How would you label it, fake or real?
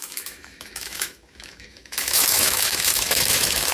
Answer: fake